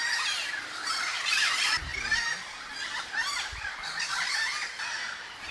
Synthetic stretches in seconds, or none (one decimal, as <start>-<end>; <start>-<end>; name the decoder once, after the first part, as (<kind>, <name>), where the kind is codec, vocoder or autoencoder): 1.3-1.9 (vocoder, BigVGAN v2)

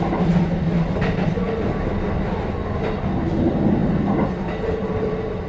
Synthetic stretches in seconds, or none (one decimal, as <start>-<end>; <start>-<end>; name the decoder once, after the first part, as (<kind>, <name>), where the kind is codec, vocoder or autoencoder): none